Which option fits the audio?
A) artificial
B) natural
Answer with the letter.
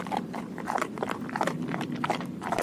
B